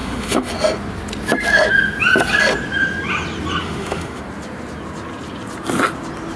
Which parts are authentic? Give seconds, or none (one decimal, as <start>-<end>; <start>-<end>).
0.5-3.6; 4.2-6.4